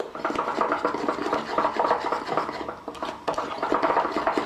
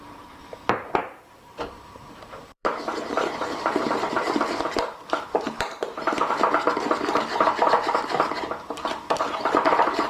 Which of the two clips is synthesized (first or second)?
second